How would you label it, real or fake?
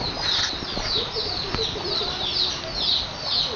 real